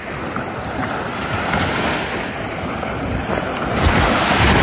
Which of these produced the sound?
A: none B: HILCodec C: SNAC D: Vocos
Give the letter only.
A